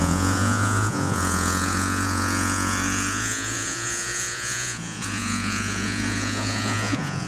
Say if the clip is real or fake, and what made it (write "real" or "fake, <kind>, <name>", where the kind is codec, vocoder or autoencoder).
fake, vocoder, Vocos